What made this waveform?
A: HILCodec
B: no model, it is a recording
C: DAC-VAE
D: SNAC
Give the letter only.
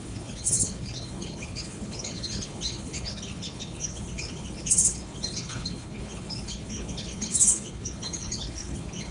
A